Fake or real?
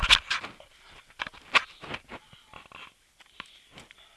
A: real